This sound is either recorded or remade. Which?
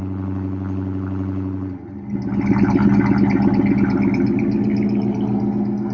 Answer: recorded